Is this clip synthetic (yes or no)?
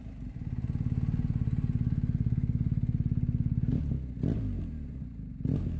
no